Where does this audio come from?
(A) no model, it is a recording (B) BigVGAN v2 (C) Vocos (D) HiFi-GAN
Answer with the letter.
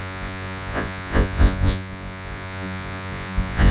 C